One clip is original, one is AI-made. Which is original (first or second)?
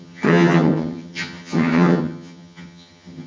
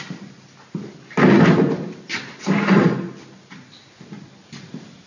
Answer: second